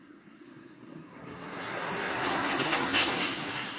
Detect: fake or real fake